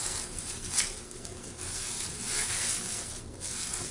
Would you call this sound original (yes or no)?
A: no